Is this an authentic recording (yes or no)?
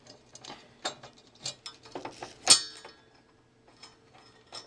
yes